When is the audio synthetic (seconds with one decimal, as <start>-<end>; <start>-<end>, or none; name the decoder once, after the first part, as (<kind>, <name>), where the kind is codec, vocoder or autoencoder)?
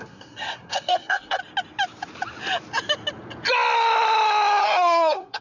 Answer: 0.0-1.4 (codec, SNAC); 4.6-5.4